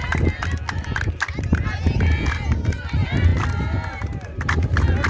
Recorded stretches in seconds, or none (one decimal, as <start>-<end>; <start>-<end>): 0.0-5.1